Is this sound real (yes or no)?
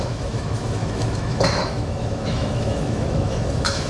no